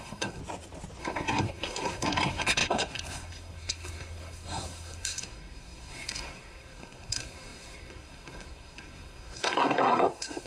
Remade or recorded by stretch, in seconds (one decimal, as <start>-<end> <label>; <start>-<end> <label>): 0.0-0.4 remade; 0.4-1.0 recorded; 1.0-10.5 remade